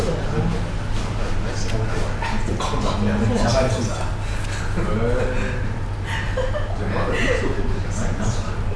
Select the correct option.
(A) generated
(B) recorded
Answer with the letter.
B